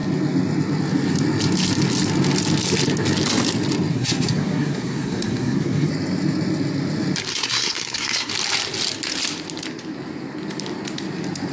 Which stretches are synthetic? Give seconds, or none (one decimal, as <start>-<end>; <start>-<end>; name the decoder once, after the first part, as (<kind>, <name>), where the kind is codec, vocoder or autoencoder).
3.9-5.9 (codec, SNAC); 7.3-8.3